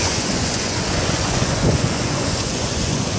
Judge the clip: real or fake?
fake